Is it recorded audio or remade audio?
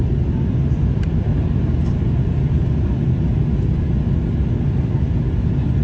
recorded